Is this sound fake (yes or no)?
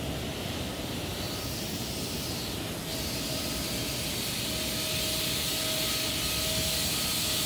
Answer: no